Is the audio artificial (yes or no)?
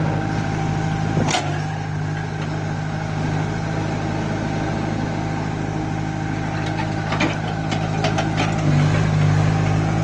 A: no